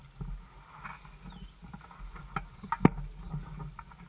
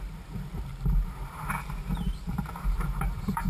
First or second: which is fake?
second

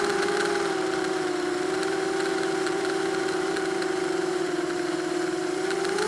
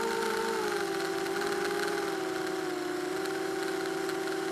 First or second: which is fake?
first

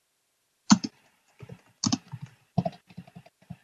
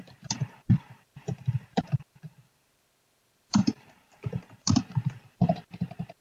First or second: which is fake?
second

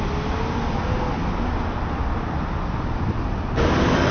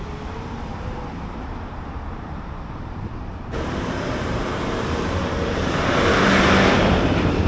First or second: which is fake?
second